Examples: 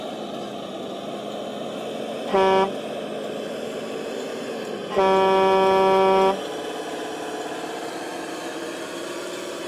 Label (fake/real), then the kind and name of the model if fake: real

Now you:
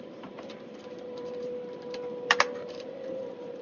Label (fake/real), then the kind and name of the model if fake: fake, vocoder, BigVGAN v2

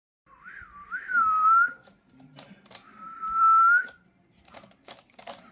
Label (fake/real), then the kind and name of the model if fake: fake, vocoder, BigVGAN v2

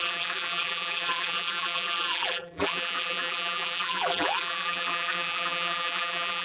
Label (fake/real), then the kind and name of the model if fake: fake, vocoder, BigVGAN v2